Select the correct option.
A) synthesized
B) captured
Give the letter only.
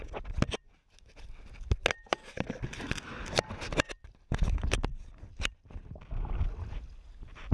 B